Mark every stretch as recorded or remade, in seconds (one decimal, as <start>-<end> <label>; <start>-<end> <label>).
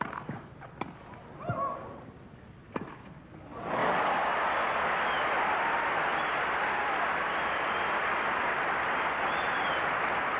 0.0-10.4 recorded